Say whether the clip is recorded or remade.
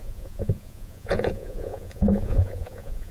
remade